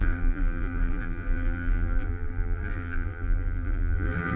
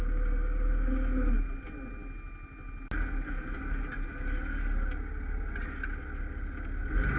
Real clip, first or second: second